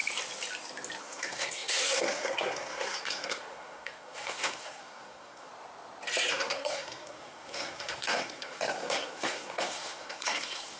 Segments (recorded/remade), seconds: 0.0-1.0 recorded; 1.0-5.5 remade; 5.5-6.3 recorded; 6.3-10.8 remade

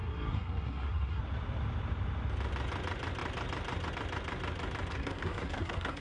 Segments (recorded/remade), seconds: 0.0-1.2 remade; 1.2-4.9 recorded; 4.9-6.0 remade

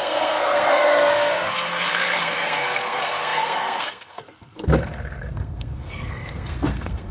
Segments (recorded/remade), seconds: 0.0-7.1 remade